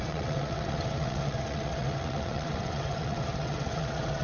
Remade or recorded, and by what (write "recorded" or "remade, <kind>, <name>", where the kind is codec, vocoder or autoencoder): remade, vocoder, WaveNeXt